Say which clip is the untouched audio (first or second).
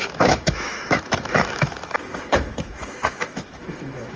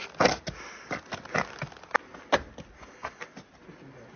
second